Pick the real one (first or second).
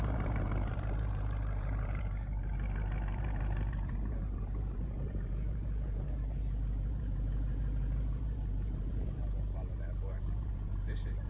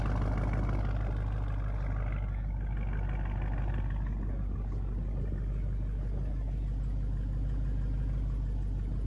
second